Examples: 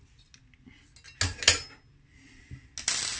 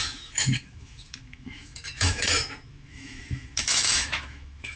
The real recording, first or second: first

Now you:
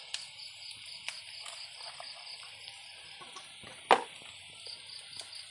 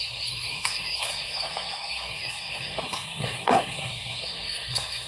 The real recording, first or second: first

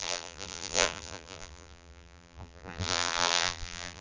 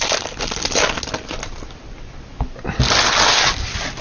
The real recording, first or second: second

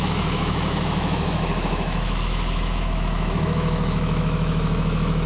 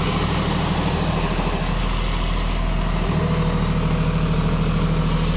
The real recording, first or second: second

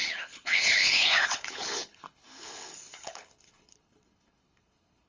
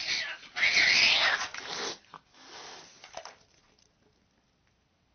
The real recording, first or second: second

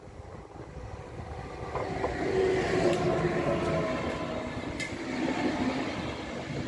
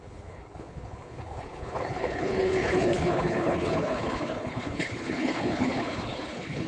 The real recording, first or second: first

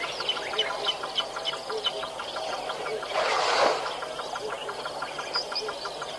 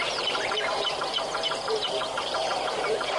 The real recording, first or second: first